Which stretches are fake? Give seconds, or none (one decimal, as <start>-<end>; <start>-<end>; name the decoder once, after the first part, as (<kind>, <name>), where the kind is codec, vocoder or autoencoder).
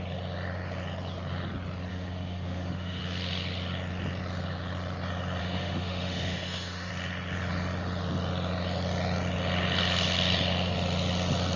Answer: 1.9-3.0 (autoencoder, DAC-VAE); 5.4-6.9